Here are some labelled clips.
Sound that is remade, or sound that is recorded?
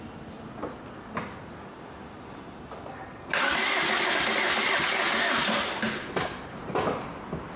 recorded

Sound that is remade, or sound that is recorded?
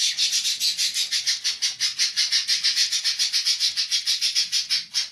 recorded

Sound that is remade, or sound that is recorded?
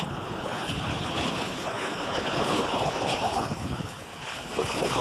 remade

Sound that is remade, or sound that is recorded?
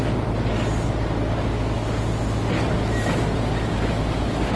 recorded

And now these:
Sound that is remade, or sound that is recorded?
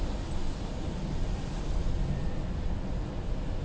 recorded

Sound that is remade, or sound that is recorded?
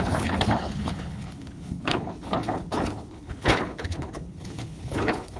remade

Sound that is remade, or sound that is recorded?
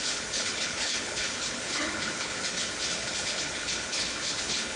remade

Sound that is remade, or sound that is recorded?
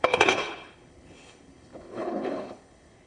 remade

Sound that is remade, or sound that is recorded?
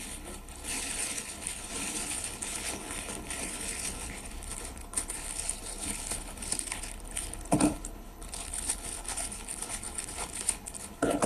remade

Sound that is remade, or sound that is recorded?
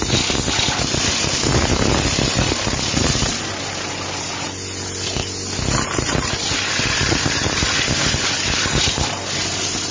recorded